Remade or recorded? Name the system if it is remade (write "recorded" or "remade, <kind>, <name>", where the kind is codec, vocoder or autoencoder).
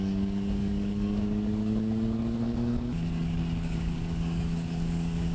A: remade, codec, DAC